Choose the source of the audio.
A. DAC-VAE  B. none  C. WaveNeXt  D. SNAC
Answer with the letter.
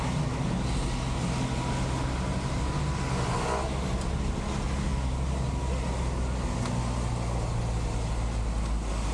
B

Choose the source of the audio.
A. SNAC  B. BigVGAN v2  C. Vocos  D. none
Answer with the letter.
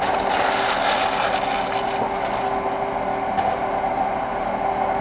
D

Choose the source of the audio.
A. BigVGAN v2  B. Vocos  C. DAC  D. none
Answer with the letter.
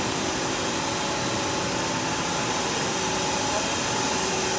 D